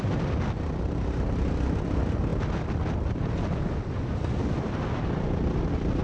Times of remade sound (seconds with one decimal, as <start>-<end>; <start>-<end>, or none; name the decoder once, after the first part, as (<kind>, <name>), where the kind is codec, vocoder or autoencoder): none